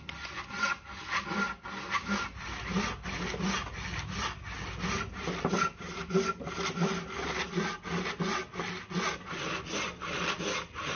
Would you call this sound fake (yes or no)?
no